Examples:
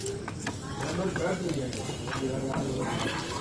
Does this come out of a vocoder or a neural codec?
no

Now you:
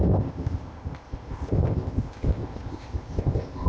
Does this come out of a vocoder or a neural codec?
yes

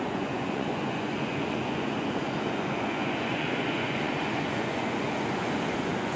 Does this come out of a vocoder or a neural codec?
yes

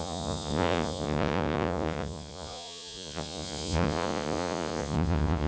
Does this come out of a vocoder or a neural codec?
yes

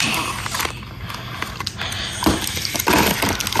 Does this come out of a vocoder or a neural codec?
no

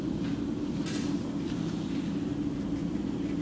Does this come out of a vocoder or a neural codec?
no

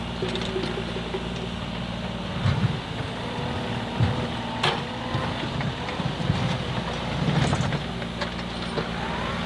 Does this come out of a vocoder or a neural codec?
no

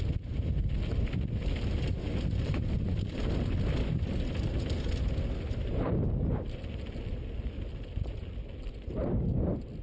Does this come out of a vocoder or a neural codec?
no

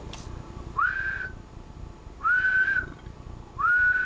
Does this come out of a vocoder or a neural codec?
no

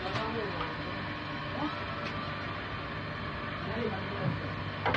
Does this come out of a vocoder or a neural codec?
no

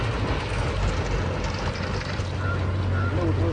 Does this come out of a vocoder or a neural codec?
no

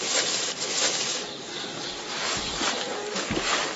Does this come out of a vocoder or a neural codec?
yes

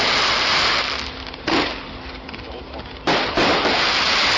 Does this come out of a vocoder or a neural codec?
yes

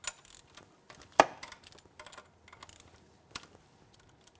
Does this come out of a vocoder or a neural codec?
no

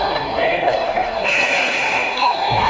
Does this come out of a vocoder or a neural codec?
yes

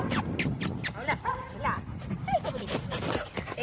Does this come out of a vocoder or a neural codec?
no